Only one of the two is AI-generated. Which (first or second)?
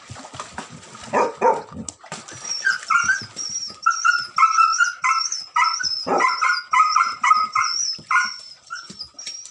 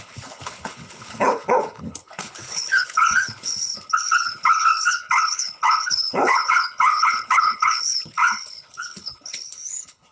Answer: second